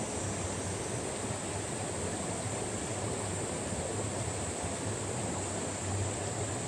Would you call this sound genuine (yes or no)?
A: yes